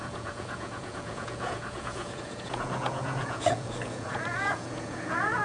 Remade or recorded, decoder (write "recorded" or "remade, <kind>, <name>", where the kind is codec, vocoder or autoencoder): remade, vocoder, Vocos